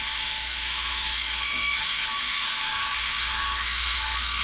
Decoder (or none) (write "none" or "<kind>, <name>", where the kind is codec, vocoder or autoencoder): autoencoder, DAC-VAE